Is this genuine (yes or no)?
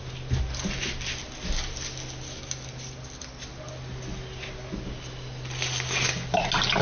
yes